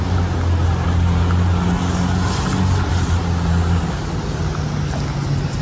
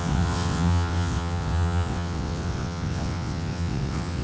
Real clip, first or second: first